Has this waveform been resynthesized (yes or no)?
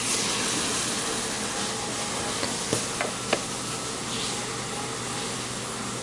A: no